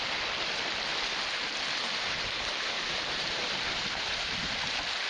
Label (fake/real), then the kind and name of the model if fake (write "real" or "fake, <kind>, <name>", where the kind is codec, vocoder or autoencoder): real